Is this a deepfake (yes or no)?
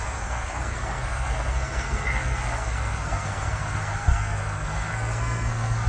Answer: yes